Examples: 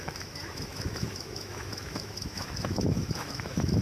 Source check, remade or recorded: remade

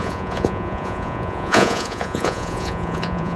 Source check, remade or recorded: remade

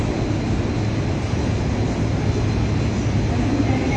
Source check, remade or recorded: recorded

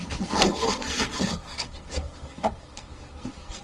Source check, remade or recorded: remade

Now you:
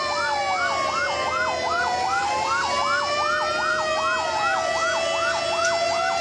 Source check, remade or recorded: recorded